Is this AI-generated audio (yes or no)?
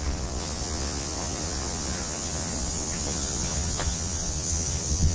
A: yes